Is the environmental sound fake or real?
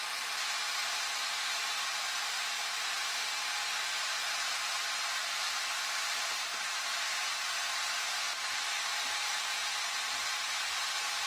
real